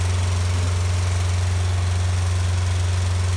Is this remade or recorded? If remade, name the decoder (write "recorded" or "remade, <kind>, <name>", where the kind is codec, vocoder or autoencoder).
recorded